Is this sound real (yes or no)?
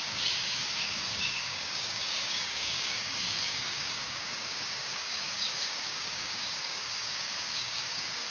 no